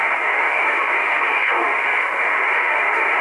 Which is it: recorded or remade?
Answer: remade